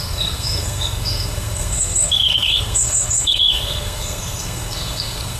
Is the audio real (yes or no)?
no